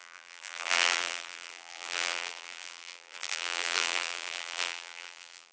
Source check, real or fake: fake